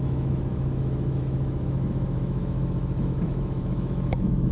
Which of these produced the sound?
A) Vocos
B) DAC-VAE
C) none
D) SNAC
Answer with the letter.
B